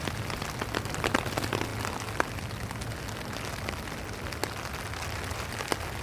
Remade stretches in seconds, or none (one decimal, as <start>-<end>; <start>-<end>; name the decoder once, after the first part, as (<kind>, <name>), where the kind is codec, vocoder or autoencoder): none